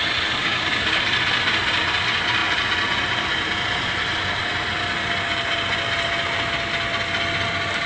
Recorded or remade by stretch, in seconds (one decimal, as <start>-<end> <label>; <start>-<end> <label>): 0.0-0.4 recorded; 0.4-1.0 remade; 1.0-7.9 recorded